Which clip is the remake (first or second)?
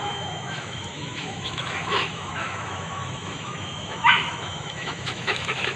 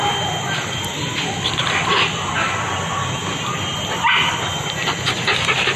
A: first